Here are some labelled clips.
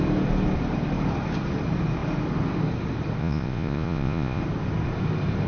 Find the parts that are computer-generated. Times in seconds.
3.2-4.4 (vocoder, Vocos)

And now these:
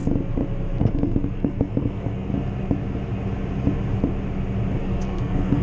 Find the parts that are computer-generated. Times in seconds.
0.8-2.3 (codec, SNAC); 4.8-5.6

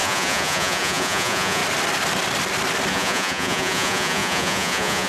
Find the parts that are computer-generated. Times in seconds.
0.0-1.6 (vocoder, Vocos); 2.9-5.1

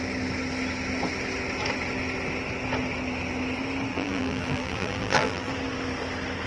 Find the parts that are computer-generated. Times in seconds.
3.9-5.5 (vocoder, BigVGAN v2)

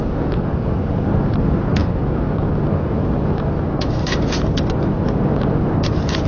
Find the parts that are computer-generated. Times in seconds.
none

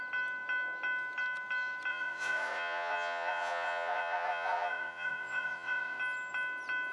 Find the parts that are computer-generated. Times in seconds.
1.9-6.0 (vocoder, Vocos)

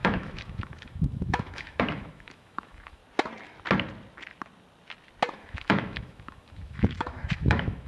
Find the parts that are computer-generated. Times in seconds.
0.0-3.0 (autoencoder, DAC-VAE); 5.3-7.9

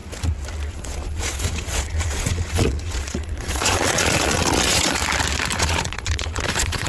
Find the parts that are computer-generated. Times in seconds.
0.7-5.0 (vocoder, Vocos); 5.6-6.9